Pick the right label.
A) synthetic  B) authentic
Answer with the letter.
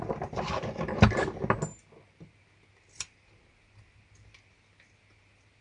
B